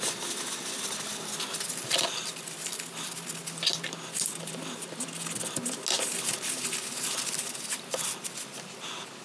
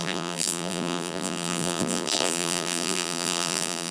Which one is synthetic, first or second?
second